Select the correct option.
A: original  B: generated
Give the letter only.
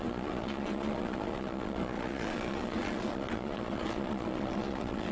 B